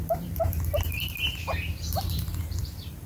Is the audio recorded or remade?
remade